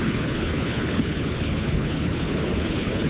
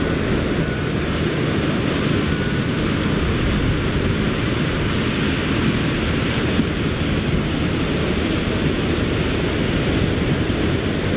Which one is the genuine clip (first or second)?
second